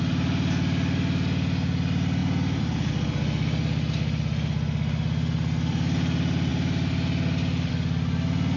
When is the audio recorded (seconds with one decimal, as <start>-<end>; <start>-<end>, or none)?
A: 0.0-8.6

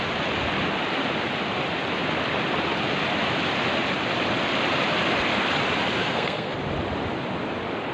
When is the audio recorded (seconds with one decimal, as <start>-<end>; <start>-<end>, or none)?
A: 0.0-6.0; 6.6-7.9

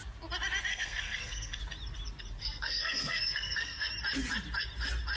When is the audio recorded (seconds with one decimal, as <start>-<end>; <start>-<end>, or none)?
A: 0.0-0.7; 1.6-2.4; 3.9-5.2

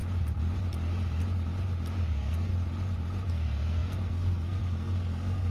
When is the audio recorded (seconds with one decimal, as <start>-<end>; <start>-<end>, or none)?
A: 0.0-2.1; 2.5-3.3

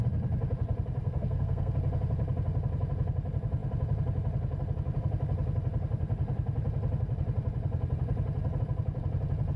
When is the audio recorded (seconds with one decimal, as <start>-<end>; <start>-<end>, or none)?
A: 0.0-1.0; 1.7-9.6